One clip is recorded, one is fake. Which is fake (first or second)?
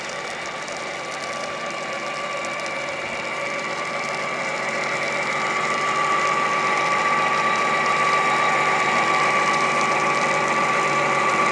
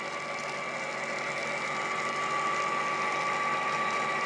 first